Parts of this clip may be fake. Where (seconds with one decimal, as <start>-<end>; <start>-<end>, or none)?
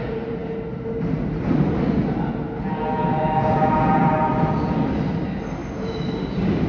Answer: none